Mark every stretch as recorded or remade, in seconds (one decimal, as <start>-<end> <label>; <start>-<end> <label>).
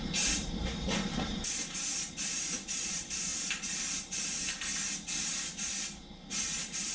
0.0-1.9 remade; 1.9-2.9 recorded; 2.9-3.3 remade; 3.3-6.3 recorded; 6.3-6.9 remade